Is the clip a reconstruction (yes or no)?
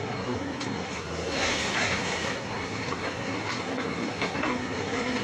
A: yes